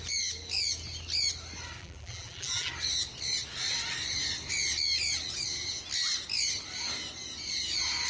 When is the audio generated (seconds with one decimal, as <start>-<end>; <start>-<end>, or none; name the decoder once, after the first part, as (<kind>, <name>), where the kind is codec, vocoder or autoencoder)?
1.8-2.7 (vocoder, BigVGAN v2)